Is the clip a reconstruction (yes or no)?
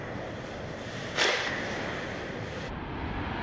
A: no